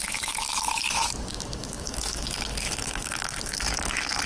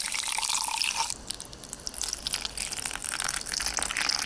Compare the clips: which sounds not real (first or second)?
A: first